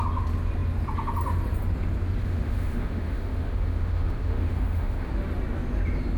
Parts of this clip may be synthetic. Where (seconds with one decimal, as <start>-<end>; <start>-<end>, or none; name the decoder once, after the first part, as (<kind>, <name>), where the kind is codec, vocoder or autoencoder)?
2.2-5.1 (autoencoder, DAC-VAE)